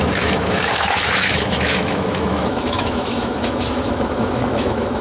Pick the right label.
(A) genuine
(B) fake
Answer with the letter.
B